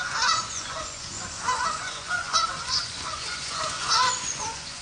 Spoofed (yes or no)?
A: yes